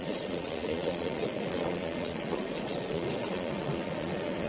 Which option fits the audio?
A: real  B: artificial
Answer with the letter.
B